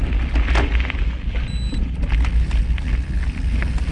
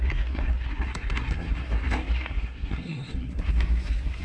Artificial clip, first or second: second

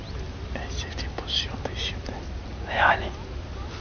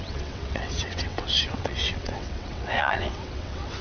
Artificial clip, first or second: second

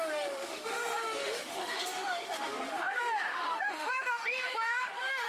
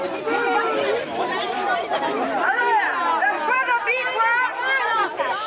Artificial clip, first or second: first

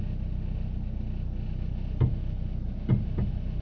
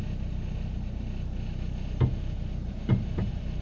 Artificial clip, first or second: second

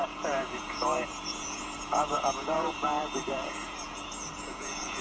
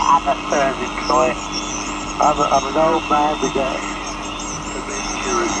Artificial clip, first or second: first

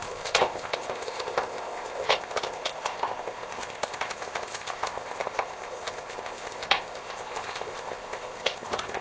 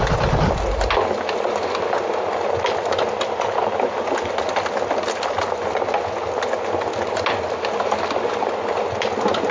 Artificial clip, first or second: first